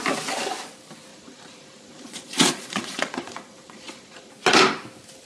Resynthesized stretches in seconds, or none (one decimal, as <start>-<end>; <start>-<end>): 1.1-4.3